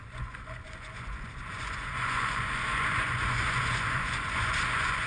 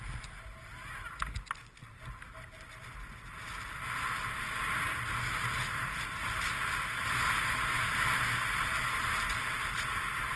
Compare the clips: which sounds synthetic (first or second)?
first